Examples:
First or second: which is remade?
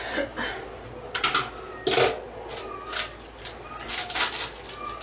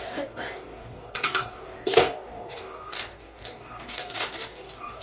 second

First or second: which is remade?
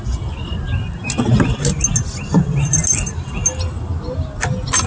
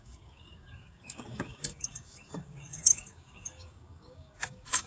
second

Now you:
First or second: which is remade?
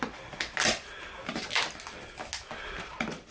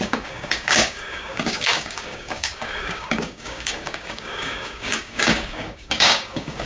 second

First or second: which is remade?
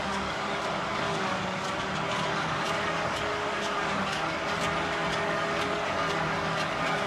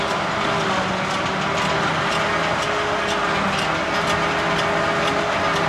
first